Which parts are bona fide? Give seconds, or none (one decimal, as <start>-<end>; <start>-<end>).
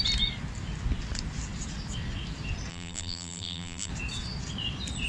0.0-2.7; 3.9-5.1